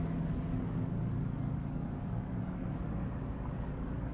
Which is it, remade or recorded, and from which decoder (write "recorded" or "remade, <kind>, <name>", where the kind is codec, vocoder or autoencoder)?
remade, codec, DAC